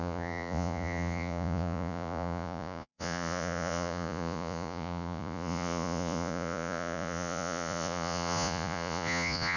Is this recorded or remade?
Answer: remade